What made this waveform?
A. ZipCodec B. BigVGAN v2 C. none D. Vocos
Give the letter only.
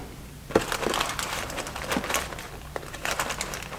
C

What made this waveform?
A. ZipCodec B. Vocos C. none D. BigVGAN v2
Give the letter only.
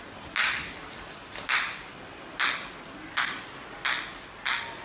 C